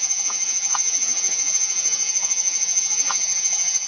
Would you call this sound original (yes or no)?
no